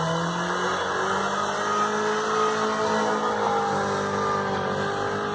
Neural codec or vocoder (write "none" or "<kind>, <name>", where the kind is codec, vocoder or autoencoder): none